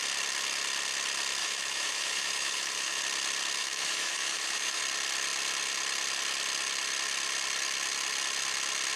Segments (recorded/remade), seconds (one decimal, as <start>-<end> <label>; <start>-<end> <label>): 0.0-1.4 recorded; 1.4-3.0 remade; 3.0-3.6 recorded; 3.6-4.8 remade; 4.8-9.0 recorded